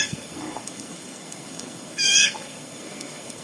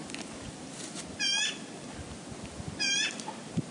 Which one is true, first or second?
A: second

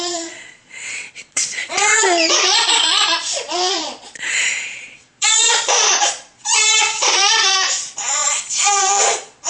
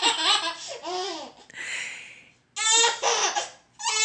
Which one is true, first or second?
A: second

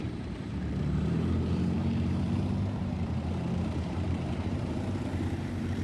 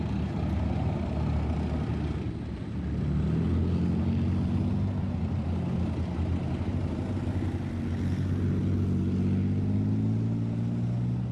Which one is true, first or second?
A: second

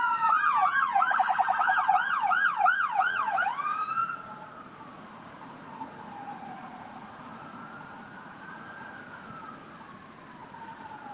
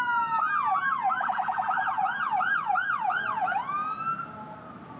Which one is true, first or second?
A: second